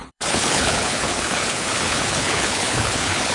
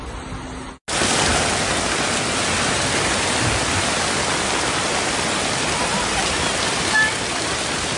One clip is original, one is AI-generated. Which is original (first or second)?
second